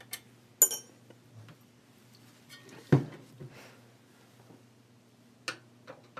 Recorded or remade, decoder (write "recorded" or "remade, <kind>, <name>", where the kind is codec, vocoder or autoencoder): recorded